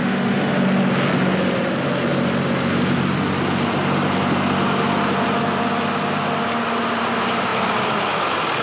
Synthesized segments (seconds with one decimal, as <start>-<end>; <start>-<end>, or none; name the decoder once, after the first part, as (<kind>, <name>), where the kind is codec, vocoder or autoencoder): 0.0-0.5 (autoencoder, DAC-VAE)